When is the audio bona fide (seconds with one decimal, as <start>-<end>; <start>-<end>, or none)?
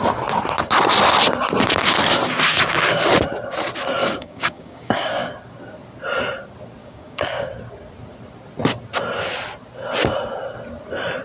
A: 0.0-4.0; 5.3-6.8; 7.5-11.2